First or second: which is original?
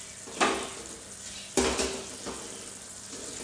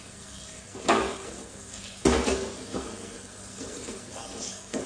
first